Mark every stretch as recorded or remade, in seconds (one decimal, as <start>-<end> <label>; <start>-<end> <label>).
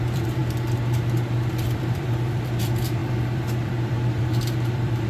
0.0-5.1 remade